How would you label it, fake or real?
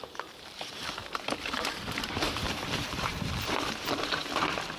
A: fake